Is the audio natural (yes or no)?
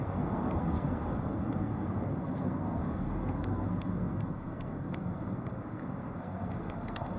no